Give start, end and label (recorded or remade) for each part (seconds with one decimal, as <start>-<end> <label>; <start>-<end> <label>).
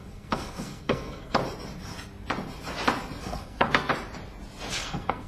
0.0-1.4 remade; 1.4-3.2 recorded; 3.2-3.9 remade; 3.9-4.7 recorded; 4.7-5.3 remade